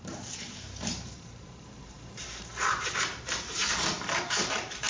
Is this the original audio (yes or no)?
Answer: no